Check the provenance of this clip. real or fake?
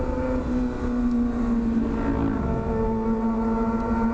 real